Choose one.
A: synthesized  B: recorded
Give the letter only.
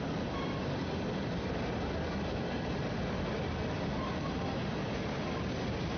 B